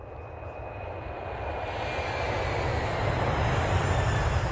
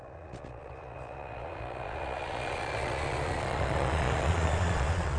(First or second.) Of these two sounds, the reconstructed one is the second